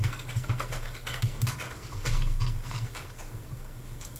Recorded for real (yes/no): no